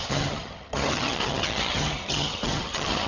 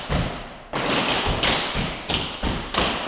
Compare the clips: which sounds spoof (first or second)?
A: first